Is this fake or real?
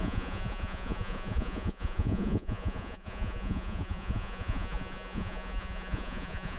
fake